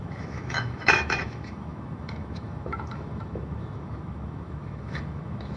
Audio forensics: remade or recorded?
remade